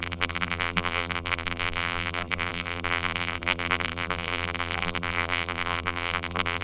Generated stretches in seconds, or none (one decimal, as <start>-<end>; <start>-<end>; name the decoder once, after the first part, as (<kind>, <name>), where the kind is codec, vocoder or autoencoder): 0.0-6.6 (vocoder, BigVGAN v2)

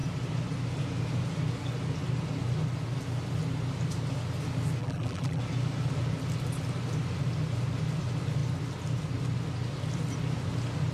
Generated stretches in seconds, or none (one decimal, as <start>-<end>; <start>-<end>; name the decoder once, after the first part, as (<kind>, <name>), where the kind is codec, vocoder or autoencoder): 4.8-5.4 (vocoder, BigVGAN v2)